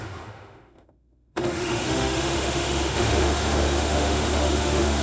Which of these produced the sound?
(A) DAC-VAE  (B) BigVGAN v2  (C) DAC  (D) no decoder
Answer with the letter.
A